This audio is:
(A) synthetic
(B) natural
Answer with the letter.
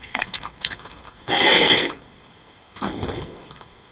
A